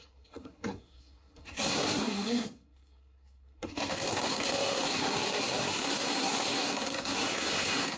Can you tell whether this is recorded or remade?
remade